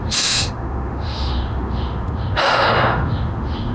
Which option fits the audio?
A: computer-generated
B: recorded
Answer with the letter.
A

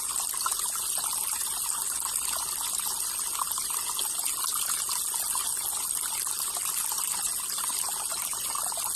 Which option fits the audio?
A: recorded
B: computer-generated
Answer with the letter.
A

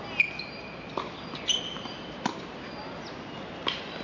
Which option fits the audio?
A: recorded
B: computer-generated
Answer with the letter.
A